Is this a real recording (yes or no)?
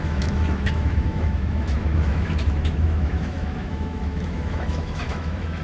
no